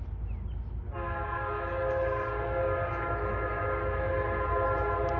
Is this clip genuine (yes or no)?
yes